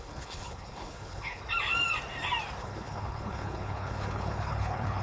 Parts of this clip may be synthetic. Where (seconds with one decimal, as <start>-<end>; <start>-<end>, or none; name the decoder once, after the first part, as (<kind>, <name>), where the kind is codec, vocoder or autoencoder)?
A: 0.0-1.4 (codec, HILCodec); 2.6-5.0